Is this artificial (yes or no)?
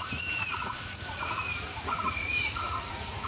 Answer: yes